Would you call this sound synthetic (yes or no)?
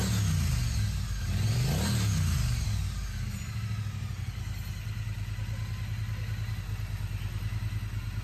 no